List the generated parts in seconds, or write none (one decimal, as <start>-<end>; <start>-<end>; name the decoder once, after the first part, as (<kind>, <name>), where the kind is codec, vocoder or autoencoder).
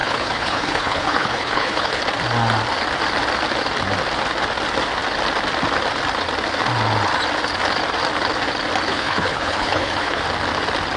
0.0-2.0 (codec, HILCodec); 8.9-10.2